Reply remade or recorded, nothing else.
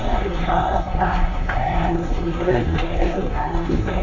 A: remade